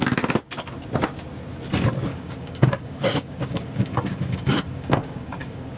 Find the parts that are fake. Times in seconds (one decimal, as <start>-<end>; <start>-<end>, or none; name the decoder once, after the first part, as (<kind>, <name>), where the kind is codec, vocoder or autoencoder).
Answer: 2.1-5.8 (codec, DAC)